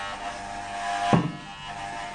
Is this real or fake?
real